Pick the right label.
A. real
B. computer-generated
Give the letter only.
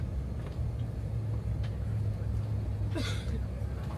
A